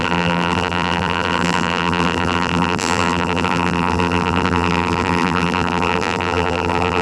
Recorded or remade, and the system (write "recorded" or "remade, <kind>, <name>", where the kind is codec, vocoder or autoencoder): remade, vocoder, BigVGAN v2